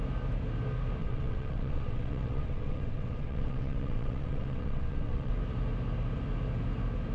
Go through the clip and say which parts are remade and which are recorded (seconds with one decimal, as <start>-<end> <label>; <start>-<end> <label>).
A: 0.0-1.0 recorded; 1.0-5.3 remade; 5.3-7.1 recorded